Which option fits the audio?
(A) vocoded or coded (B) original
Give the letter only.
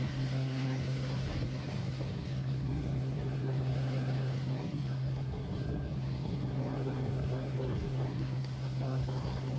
A